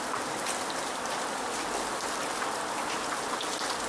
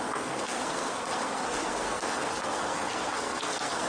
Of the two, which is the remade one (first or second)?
second